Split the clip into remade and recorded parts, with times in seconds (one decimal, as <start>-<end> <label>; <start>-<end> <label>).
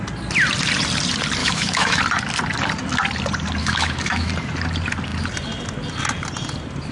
0.0-1.4 recorded; 1.4-2.0 remade; 2.0-3.6 recorded; 3.6-4.3 remade; 4.3-6.9 recorded